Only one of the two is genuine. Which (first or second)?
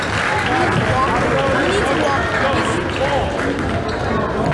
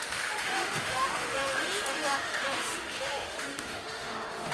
first